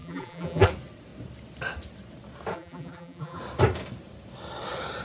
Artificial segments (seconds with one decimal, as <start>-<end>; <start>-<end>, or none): 0.0-0.7; 2.5-3.4